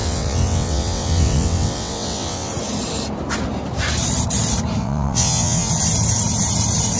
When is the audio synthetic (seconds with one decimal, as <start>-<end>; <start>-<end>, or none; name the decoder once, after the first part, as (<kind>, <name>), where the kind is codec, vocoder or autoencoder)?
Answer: 0.0-2.5 (vocoder, WaveNeXt); 4.8-5.7